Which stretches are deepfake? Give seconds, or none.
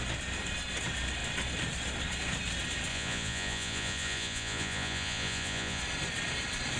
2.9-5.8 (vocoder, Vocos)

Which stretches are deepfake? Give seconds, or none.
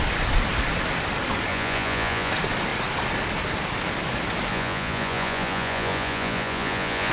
1.5-2.3 (vocoder, Vocos); 4.5-7.1